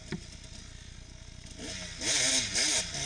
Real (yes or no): yes